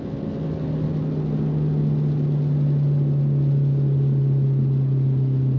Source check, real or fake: real